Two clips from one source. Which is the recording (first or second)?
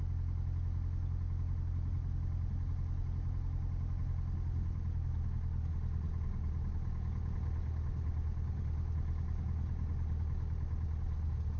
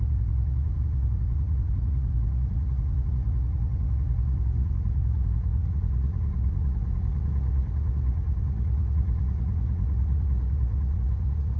first